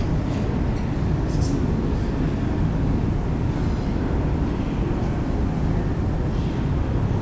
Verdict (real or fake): real